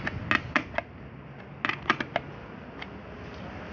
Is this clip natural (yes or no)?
yes